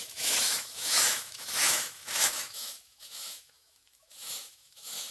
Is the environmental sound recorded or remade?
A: remade